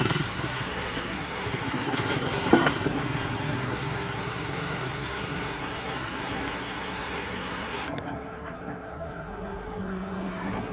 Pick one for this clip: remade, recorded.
remade